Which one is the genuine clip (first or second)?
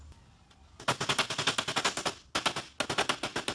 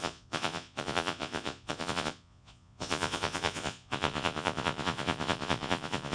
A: first